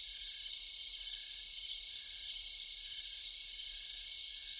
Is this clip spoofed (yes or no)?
yes